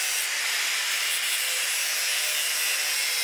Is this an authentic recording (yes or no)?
yes